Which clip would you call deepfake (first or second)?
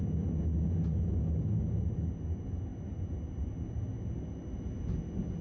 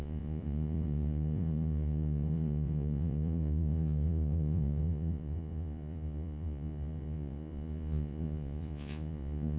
second